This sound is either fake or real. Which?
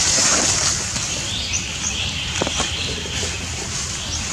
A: real